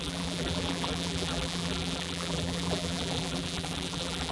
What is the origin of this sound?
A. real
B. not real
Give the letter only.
B